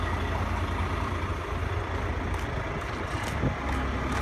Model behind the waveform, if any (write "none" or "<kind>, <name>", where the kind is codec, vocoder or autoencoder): none